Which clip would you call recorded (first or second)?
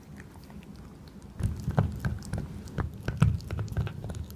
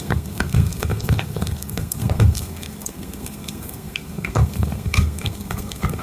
first